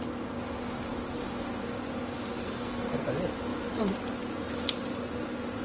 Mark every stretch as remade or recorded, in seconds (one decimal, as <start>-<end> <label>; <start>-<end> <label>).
0.0-2.4 recorded; 2.4-3.1 remade; 3.1-5.6 recorded